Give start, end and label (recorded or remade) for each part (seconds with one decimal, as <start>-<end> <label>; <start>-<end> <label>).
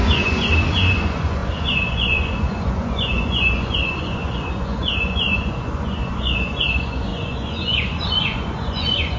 0.0-9.2 remade